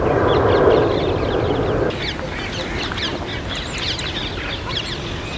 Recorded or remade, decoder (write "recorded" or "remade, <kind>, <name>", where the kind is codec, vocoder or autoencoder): recorded